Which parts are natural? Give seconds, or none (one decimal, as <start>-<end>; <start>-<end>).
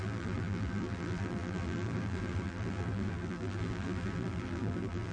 none